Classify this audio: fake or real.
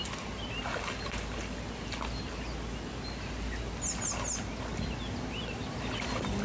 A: real